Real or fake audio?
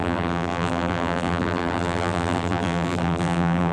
fake